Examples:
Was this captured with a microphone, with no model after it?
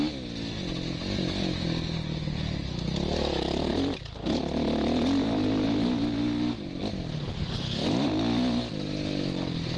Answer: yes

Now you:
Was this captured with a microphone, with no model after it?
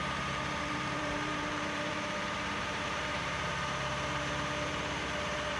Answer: no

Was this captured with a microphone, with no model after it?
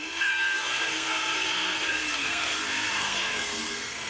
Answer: no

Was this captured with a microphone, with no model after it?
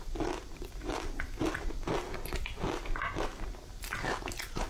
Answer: yes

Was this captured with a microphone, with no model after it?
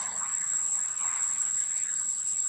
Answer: no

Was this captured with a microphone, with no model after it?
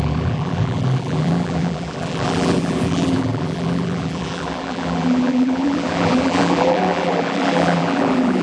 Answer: no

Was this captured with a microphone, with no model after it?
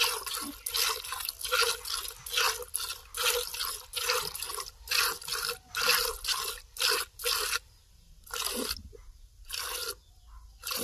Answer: yes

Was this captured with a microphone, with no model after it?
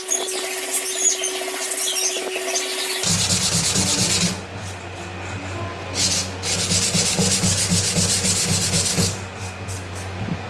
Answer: yes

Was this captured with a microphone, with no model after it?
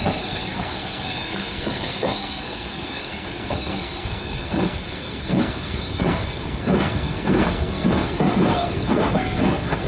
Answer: no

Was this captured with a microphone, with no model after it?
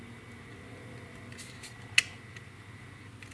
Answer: yes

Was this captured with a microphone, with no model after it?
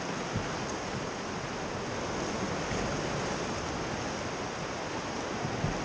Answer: yes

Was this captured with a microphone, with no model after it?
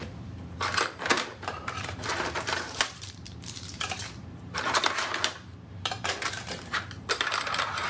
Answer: no